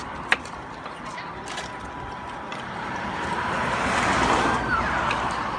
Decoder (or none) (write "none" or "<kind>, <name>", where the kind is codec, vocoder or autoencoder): none